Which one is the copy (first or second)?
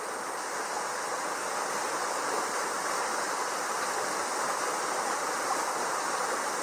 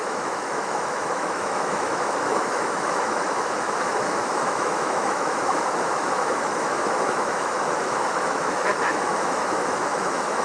second